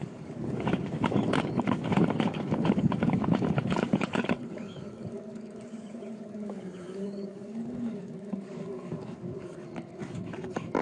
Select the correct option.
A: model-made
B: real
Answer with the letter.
A